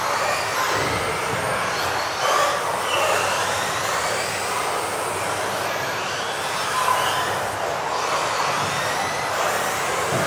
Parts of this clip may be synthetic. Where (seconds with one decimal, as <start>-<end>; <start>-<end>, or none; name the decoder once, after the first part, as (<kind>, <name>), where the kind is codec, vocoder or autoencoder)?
none